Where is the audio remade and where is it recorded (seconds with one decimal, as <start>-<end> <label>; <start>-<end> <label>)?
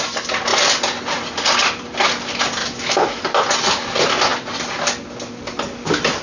0.0-2.6 recorded; 2.6-3.2 remade; 3.2-6.2 recorded